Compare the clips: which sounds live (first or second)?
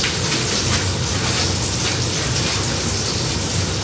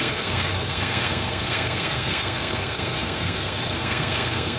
first